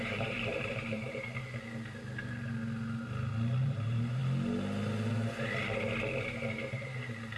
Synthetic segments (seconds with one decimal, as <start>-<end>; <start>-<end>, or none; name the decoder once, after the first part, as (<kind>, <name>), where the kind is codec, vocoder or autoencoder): 0.0-1.3 (vocoder, BigVGAN v2); 3.6-4.2; 6.7-7.4